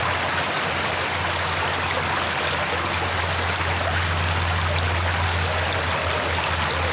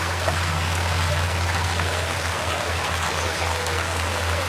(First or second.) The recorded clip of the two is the first